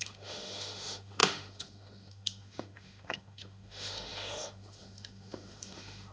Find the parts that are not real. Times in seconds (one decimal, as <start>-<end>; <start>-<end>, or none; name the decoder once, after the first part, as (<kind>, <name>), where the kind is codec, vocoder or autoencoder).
0.0-6.1 (autoencoder, DAC-VAE)